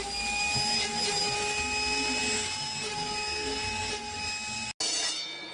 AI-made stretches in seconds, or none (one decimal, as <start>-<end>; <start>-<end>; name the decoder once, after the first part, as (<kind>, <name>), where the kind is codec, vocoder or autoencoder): none